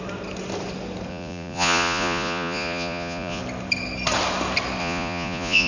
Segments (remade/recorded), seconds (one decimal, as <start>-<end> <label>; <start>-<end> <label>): 0.0-1.1 recorded; 1.1-3.4 remade; 3.4-4.8 recorded; 4.8-5.7 remade

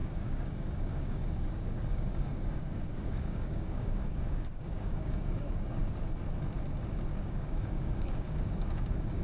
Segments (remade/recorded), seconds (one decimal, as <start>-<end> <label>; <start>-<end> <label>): 0.0-5.8 remade; 5.8-7.2 recorded; 7.2-9.2 remade

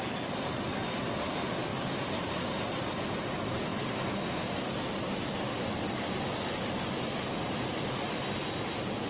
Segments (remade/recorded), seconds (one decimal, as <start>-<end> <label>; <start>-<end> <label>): 0.0-9.1 recorded